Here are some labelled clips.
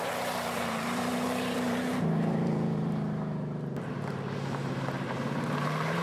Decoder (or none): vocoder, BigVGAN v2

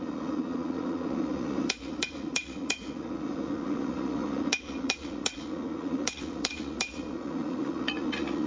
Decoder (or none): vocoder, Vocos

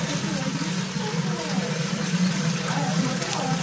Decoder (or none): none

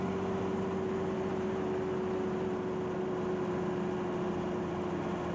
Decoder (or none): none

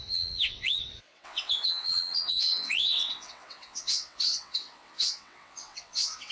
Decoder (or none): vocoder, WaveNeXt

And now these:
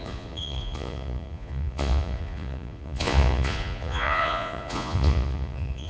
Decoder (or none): vocoder, Vocos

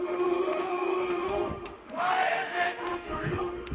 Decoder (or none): autoencoder, DAC-VAE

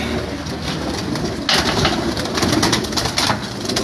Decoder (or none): none